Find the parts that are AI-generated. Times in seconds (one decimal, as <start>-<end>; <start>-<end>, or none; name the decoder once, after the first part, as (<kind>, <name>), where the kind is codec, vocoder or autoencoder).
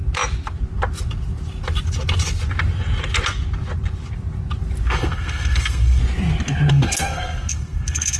4.9-6.0 (codec, SNAC); 6.7-8.2